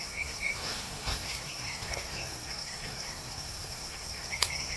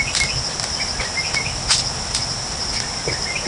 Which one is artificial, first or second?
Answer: first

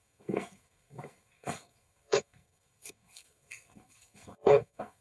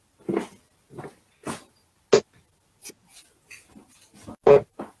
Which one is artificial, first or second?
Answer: first